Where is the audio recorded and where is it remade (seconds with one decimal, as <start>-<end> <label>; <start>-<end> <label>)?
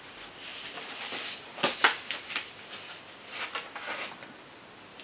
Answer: 0.0-5.0 recorded